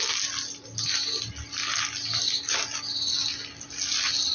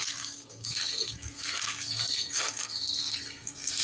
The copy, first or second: second